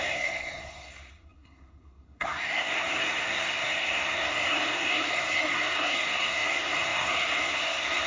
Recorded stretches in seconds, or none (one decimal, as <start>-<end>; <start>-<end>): none